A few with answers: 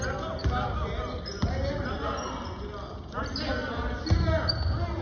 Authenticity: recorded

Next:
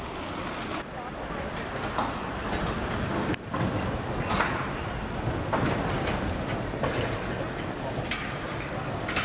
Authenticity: recorded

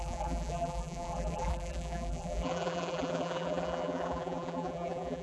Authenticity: remade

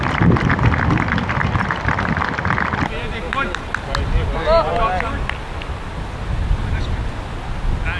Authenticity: recorded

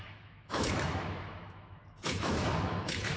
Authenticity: remade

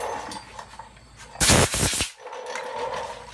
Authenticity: recorded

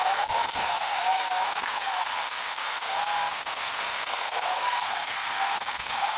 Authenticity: remade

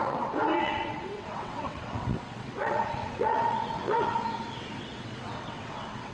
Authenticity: remade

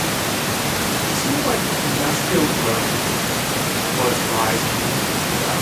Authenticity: recorded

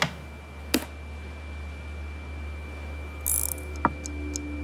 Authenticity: recorded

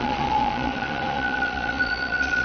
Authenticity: remade